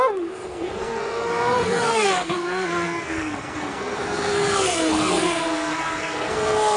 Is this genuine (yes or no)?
no